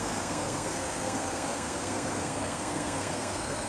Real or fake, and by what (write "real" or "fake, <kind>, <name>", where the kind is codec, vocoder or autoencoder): fake, codec, SNAC